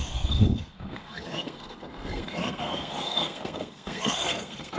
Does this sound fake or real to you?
fake